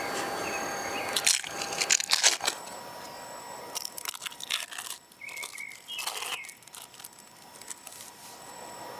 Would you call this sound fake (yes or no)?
no